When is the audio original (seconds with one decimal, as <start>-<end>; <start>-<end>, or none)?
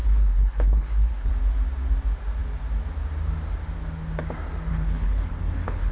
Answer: 1.3-4.7